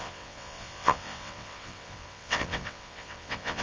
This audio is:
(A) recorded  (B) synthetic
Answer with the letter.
B